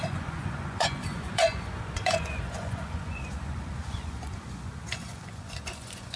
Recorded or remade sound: remade